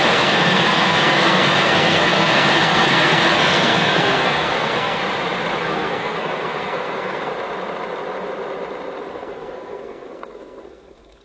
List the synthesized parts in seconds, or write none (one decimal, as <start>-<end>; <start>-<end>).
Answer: 0.0-5.0; 5.6-7.3; 9.1-11.2